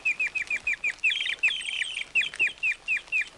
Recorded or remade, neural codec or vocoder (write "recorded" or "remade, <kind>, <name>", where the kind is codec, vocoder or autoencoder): recorded